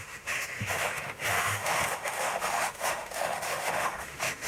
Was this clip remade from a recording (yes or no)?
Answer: yes